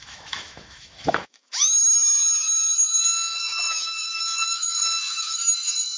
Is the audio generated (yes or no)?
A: yes